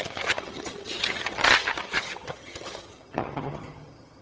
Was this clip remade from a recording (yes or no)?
yes